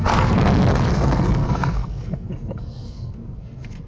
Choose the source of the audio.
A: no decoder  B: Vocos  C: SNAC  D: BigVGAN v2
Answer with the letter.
C